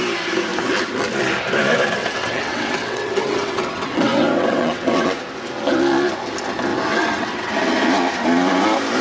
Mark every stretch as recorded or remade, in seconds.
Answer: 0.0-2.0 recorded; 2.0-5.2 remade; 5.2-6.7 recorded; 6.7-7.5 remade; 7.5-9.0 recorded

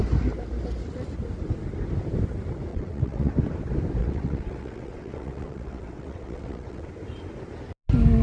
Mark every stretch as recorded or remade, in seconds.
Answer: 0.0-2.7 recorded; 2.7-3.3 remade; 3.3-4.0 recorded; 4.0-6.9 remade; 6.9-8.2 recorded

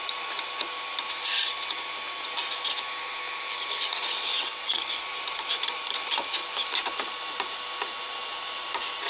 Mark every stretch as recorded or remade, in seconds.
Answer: 0.0-4.3 recorded; 4.3-4.8 remade; 4.8-9.1 recorded

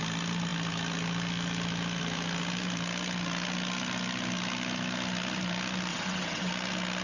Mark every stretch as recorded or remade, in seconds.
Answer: 0.0-5.9 recorded; 5.9-6.5 remade; 6.5-7.0 recorded